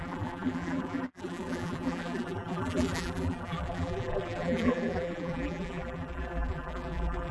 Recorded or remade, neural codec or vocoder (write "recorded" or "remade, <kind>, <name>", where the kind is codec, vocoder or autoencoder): remade, vocoder, BigVGAN v2